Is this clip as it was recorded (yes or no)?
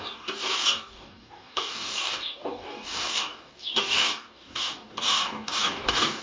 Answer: no